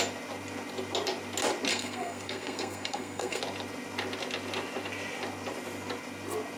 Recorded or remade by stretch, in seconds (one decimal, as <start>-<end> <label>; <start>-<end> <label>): 0.0-1.7 recorded; 1.7-3.4 remade; 3.4-6.6 recorded